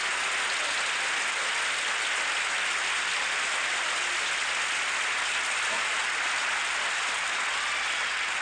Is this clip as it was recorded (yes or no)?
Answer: yes